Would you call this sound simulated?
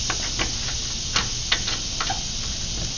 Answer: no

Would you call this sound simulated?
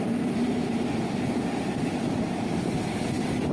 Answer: yes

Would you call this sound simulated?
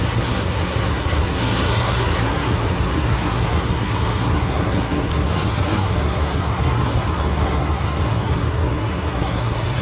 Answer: yes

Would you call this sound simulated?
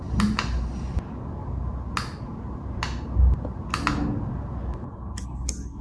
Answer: no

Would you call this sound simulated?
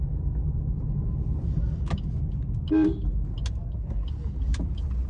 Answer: no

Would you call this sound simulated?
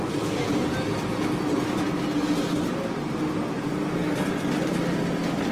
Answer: no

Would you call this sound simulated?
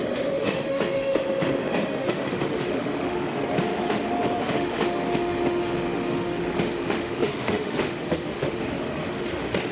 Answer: yes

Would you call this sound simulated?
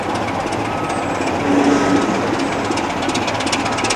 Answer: no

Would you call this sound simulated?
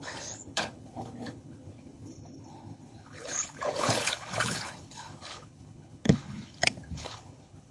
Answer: yes